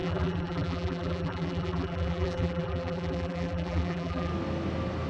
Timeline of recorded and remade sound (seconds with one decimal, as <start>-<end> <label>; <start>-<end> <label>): 0.0-4.3 remade; 4.3-5.1 recorded